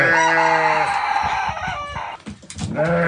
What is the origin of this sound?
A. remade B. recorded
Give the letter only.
B